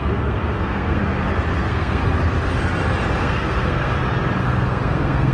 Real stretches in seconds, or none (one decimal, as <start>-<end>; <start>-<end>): 1.0-1.6; 2.0-3.2; 3.9-4.4

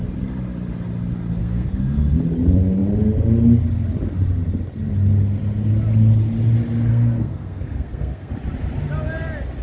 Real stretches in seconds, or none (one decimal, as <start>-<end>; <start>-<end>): 0.0-1.4; 2.2-6.9; 8.3-9.6